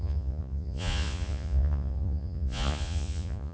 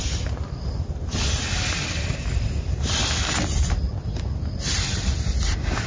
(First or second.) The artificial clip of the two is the first